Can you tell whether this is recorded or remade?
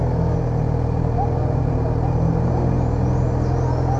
recorded